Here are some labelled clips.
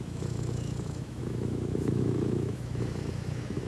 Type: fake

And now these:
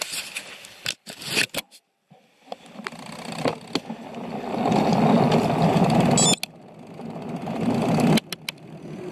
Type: real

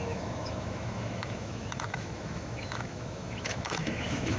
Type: fake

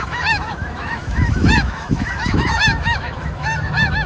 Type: fake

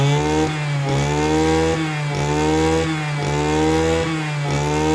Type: real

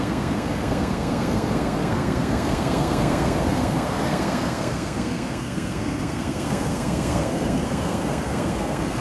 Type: fake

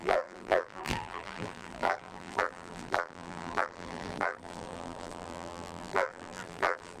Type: fake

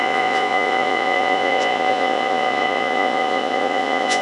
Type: fake